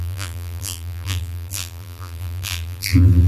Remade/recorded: remade